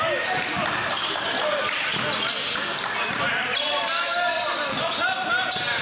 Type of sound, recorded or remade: recorded